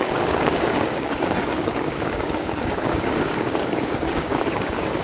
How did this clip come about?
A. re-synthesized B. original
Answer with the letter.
A